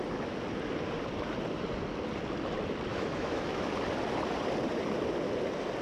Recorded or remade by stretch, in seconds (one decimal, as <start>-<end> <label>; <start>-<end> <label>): 0.0-2.9 recorded; 2.9-3.7 remade; 3.7-5.8 recorded